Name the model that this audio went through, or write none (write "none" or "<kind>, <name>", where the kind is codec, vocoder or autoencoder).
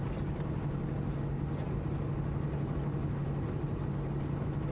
none